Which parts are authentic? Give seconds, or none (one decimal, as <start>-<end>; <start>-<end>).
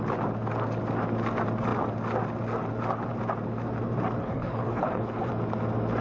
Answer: 0.0-4.2; 5.3-6.0